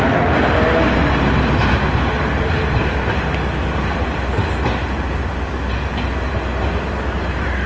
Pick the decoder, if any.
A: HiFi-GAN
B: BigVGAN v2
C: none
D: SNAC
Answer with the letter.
C